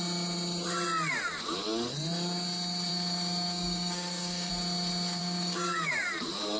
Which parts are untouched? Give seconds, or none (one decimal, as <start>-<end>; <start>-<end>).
0.0-2.9; 4.5-5.2; 5.9-6.6